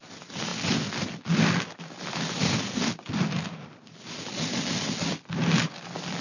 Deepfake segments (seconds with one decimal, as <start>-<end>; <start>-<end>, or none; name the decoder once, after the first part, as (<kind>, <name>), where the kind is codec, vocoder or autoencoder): none